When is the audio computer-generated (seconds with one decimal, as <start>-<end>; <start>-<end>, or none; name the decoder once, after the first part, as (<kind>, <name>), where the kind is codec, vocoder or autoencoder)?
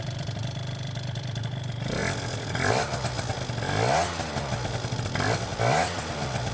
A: 0.0-3.3 (vocoder, BigVGAN v2); 4.7-6.5